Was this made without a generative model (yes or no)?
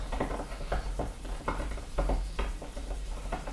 no